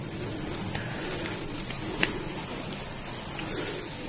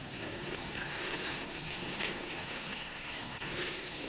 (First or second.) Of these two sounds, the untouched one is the first